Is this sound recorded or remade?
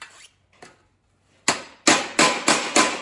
recorded